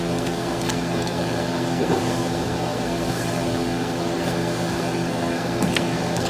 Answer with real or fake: fake